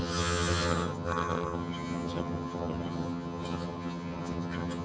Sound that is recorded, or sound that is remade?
remade